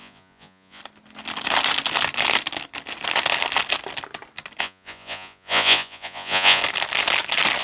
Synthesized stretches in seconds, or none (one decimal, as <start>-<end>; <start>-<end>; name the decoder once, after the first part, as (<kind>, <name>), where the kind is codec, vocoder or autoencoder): 0.0-0.8 (vocoder, Vocos); 4.6-6.6